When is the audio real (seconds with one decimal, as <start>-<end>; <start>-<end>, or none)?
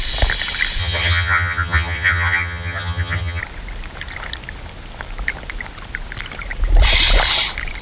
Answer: 0.0-0.8; 3.4-7.8